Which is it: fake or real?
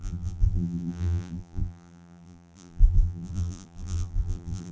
fake